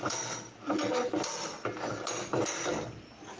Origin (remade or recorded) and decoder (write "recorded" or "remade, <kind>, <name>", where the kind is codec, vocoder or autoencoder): recorded